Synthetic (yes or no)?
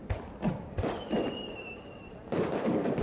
no